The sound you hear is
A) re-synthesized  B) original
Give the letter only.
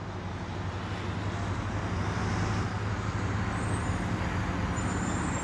B